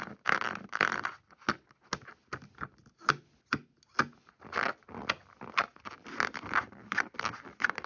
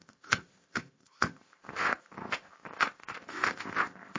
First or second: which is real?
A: first